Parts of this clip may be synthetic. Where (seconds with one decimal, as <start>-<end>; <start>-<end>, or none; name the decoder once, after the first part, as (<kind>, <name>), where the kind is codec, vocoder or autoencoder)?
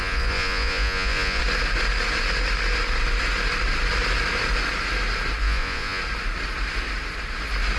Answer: 0.0-1.4 (vocoder, Vocos); 5.4-6.0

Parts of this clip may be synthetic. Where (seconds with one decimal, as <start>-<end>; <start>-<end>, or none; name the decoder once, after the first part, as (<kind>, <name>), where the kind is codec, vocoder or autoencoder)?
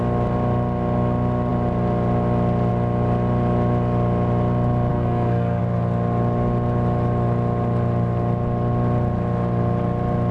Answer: 4.9-5.6 (codec, SNAC)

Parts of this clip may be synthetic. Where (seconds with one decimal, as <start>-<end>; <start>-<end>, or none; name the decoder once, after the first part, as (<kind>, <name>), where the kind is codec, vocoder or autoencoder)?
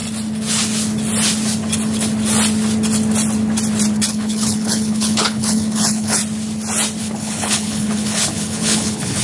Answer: 4.1-6.2 (codec, HILCodec); 7.0-9.2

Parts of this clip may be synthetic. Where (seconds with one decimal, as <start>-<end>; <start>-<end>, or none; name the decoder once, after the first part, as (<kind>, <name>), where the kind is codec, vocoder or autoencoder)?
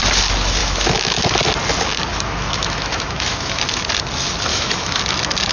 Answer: 0.6-1.2 (autoencoder, DAC-VAE); 2.1-3.6; 4.5-5.0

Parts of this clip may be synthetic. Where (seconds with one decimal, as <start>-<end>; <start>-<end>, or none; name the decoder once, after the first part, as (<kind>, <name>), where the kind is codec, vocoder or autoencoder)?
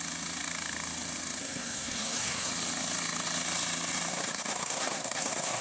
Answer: 1.4-2.5 (codec, SNAC); 4.1-5.6